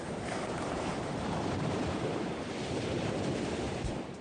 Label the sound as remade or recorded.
remade